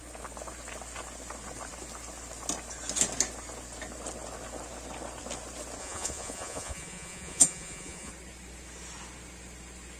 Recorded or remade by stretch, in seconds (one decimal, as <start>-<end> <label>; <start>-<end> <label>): 0.0-5.8 recorded; 5.8-8.1 remade; 8.1-10.0 recorded